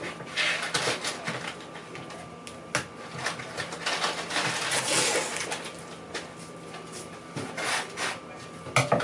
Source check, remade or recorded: recorded